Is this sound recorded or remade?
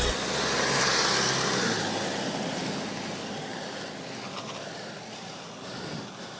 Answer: recorded